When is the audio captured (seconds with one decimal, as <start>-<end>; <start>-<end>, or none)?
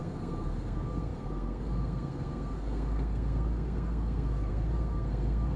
none